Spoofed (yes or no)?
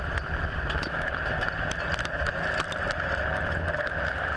no